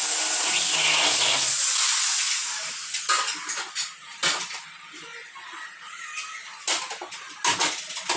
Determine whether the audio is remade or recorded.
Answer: recorded